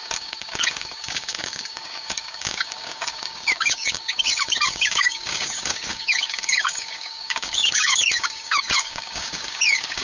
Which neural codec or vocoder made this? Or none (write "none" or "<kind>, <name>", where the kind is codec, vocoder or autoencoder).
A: codec, DAC